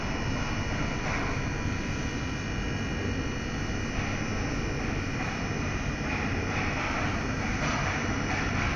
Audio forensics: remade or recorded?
recorded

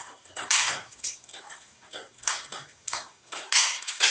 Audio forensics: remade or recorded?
remade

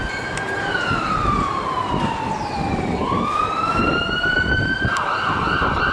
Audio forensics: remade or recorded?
recorded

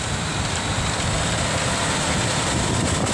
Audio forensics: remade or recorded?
recorded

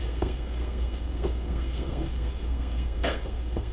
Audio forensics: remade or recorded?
remade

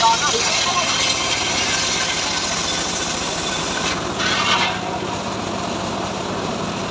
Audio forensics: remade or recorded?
recorded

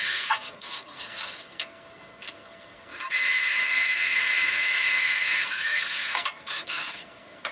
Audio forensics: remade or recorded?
remade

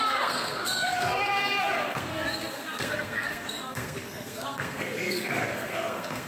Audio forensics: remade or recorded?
remade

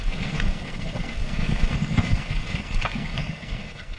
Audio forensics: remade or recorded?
remade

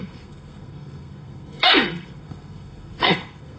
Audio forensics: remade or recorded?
remade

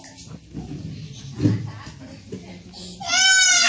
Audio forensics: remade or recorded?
recorded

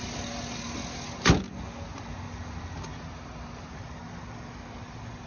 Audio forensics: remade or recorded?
recorded